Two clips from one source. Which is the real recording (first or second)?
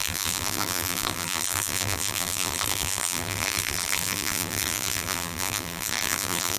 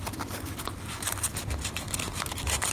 second